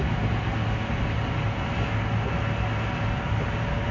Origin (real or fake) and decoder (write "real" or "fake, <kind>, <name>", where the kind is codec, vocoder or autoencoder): real